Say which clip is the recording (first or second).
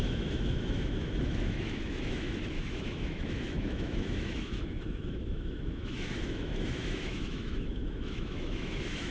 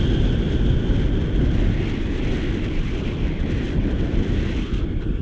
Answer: second